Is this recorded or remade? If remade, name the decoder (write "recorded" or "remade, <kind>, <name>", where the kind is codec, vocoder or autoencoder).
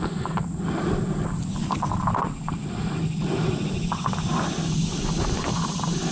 recorded